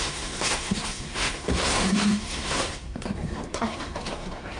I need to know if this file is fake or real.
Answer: fake